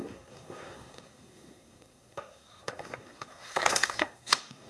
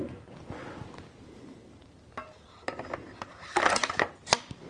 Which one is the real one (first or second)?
second